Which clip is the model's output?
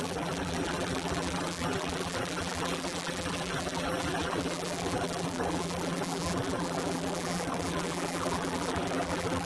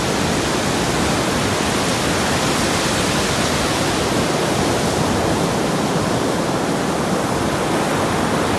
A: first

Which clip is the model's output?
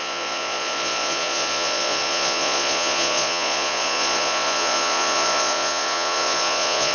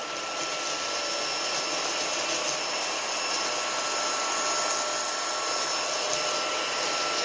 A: first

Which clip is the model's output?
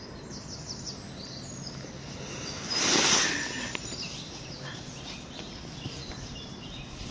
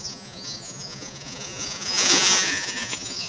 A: second